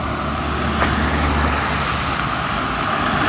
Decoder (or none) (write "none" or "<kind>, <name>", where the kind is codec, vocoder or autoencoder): none